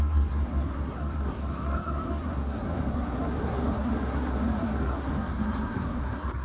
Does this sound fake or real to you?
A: fake